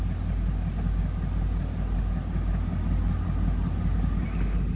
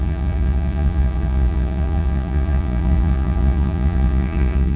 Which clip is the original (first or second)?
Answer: first